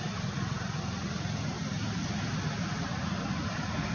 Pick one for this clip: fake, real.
real